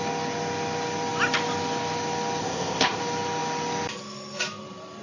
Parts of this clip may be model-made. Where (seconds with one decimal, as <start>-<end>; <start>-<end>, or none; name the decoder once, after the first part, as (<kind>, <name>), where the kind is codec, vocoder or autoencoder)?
2.4-3.0 (codec, ZipCodec)